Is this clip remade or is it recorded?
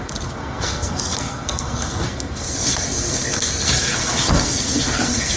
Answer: remade